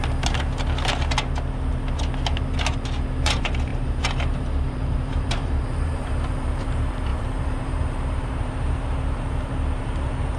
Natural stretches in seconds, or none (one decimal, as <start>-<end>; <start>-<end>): 0.0-3.2